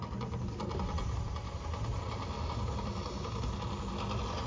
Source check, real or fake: real